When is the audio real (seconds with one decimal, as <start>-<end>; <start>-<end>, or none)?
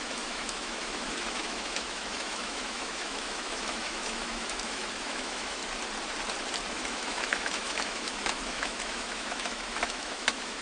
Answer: 5.6-6.7